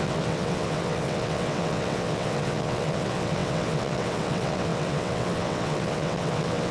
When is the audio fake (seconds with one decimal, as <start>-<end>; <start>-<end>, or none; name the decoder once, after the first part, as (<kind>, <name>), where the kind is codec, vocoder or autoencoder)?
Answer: 0.0-6.7 (vocoder, WaveNeXt)